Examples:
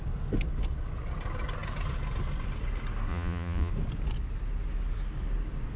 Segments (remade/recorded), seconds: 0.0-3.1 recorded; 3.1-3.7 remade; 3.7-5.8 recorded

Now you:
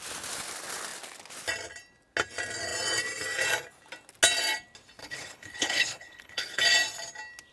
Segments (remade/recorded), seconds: 0.0-5.0 recorded; 5.0-6.6 remade; 6.6-7.5 recorded

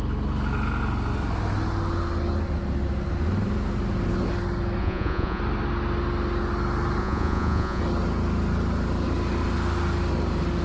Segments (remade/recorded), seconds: 0.0-4.8 recorded; 4.8-5.4 remade; 5.4-7.0 recorded; 7.0-7.8 remade; 7.8-10.6 recorded

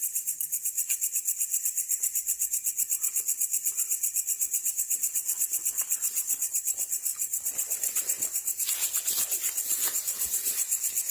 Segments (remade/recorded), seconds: 0.0-11.1 remade